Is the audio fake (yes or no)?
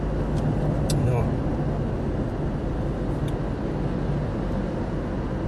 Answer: no